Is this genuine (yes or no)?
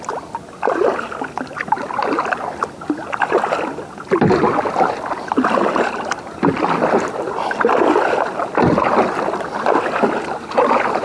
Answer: yes